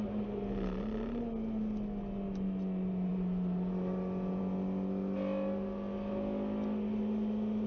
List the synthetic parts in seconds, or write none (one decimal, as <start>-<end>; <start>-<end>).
none